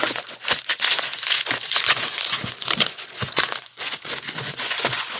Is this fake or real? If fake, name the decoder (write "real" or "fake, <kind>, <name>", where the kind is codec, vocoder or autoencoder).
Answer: fake, vocoder, Vocos